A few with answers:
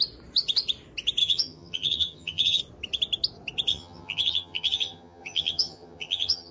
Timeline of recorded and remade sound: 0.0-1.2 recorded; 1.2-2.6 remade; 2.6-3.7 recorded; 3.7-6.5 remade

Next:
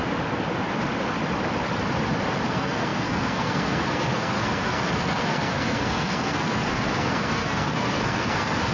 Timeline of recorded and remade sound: 0.0-2.5 recorded; 2.5-8.7 remade